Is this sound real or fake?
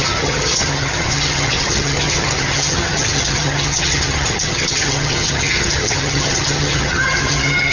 fake